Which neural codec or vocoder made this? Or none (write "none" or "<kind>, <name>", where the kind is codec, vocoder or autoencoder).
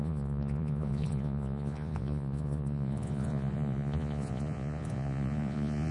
vocoder, Vocos